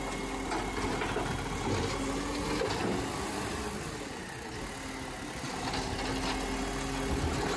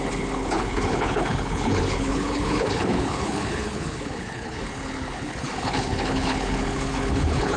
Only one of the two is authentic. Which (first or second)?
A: first